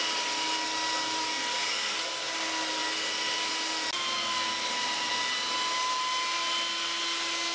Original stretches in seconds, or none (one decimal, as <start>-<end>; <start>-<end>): 0.0-7.5